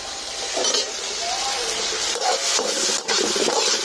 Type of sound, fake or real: real